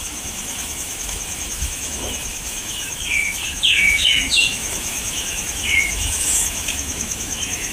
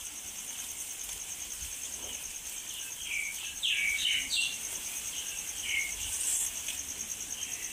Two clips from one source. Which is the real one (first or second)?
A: second